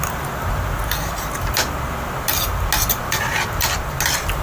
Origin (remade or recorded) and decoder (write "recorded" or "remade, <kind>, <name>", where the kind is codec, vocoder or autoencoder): recorded